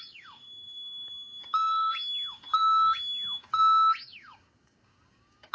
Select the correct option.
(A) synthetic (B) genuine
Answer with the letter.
A